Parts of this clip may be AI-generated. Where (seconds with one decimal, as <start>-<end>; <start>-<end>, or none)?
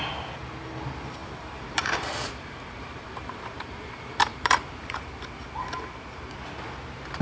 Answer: 1.2-5.1